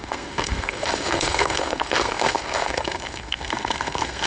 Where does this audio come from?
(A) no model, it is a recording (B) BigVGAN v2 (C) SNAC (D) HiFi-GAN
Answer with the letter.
C